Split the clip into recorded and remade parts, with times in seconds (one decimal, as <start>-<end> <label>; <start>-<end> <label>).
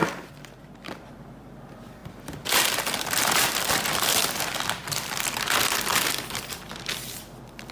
0.0-7.7 remade